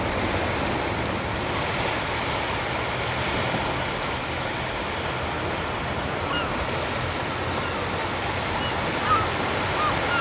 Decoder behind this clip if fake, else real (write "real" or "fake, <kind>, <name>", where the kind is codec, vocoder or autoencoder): real